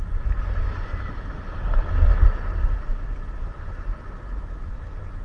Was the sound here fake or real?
real